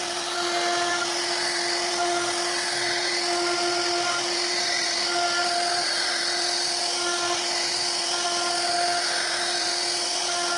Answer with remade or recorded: recorded